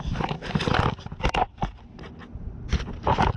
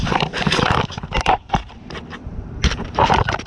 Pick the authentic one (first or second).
first